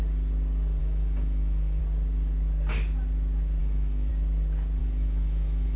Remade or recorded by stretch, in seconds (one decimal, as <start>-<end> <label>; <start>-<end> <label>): 0.0-0.8 recorded; 0.8-1.8 remade; 1.8-3.6 recorded; 3.6-4.1 remade; 4.1-4.8 recorded; 4.8-5.8 remade